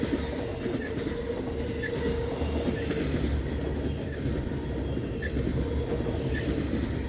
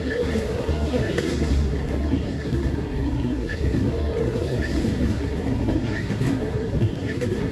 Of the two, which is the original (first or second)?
first